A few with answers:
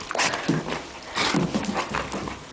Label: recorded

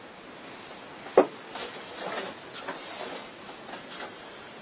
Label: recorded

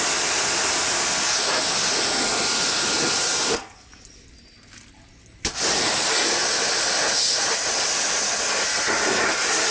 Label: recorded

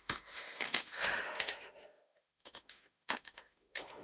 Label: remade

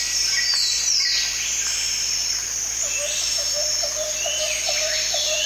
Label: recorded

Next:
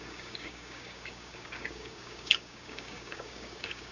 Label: remade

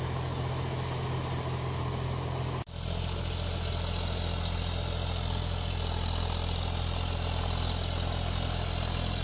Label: recorded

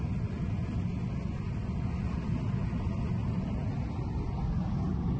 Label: recorded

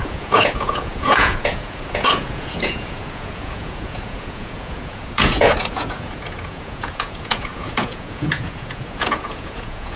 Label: remade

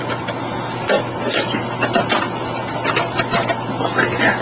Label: recorded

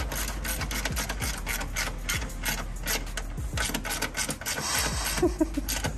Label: recorded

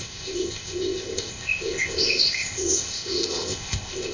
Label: remade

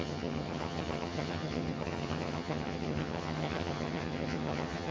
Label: remade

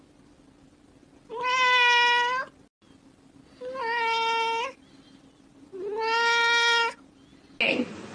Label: recorded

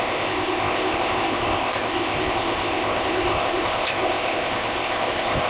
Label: remade